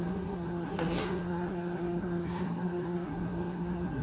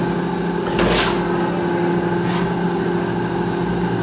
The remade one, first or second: first